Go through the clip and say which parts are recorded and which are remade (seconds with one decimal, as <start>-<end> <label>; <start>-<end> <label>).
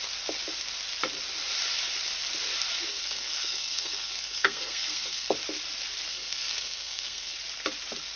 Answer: 0.0-2.9 recorded; 2.9-5.3 remade; 5.3-6.1 recorded; 6.1-7.4 remade; 7.4-8.2 recorded